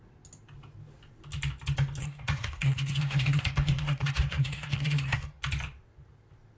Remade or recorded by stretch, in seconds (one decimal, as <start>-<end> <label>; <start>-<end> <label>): 0.0-2.0 recorded; 2.0-5.4 remade; 5.4-6.6 recorded